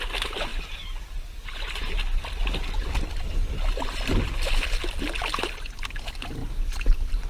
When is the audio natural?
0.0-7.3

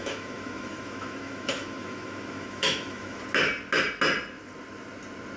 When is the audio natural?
3.2-5.4